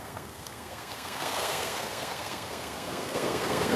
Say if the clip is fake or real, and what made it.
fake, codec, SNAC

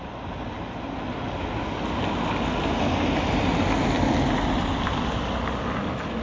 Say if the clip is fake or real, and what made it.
real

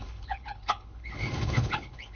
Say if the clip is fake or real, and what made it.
fake, codec, HILCodec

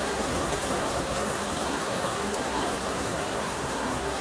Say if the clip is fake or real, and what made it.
fake, codec, SNAC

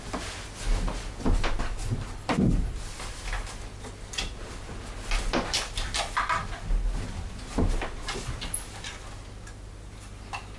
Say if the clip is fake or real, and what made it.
real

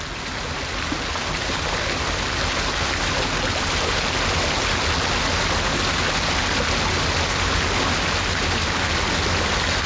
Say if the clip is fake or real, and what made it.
real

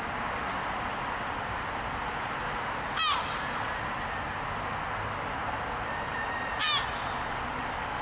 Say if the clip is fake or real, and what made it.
real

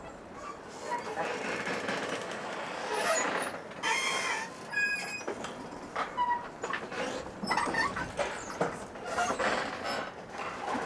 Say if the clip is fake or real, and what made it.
real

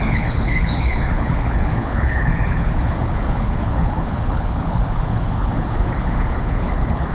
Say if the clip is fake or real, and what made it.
fake, codec, HILCodec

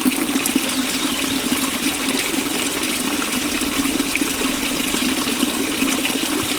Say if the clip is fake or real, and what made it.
real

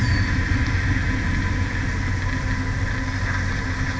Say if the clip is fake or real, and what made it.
real